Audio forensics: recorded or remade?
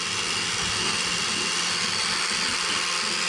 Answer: recorded